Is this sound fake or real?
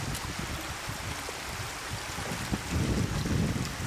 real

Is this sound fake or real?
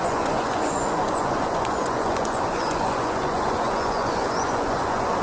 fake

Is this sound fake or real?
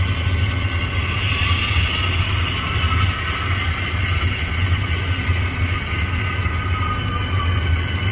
real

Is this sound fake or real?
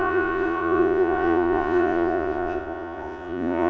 fake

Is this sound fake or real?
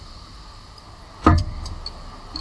real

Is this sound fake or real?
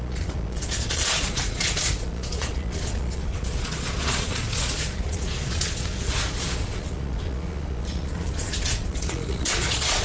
fake